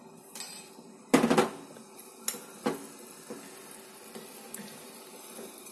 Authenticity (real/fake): real